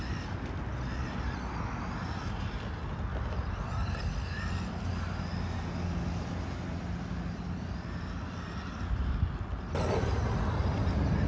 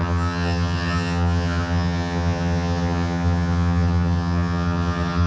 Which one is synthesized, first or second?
second